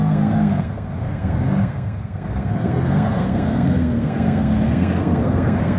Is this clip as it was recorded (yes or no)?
no